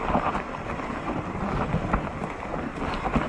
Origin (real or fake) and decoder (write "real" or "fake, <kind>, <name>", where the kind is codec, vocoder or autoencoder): real